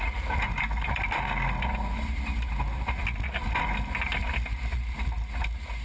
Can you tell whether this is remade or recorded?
recorded